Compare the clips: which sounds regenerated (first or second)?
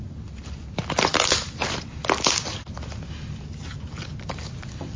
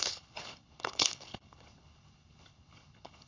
second